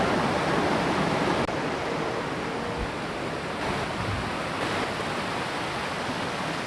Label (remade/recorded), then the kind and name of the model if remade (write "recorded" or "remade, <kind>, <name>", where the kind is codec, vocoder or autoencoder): recorded